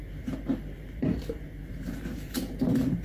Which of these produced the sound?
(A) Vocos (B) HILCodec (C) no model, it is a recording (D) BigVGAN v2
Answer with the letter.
D